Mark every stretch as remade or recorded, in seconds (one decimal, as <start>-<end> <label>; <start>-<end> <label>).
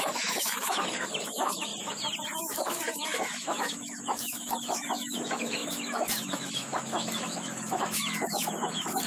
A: 0.0-1.7 remade; 1.7-2.4 recorded; 2.4-9.1 remade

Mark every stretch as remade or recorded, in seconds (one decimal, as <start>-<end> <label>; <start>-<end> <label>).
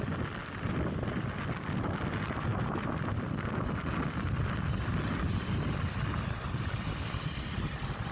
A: 0.0-8.1 recorded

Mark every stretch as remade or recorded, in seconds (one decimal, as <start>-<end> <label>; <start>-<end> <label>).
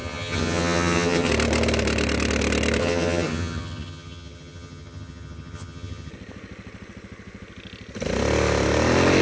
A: 0.0-1.3 remade; 1.3-2.8 recorded; 2.8-6.1 remade; 6.1-9.2 recorded